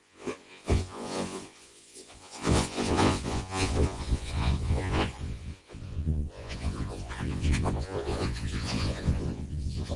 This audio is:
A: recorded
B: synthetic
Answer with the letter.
B